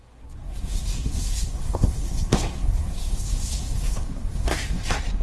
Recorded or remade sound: remade